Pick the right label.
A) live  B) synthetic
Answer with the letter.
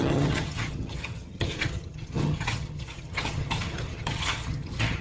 B